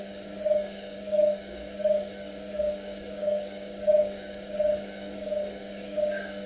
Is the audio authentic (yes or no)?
no